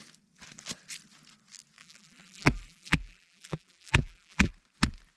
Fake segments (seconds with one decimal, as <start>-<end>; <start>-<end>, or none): 1.8-4.5